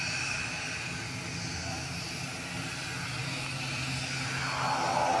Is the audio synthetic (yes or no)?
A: no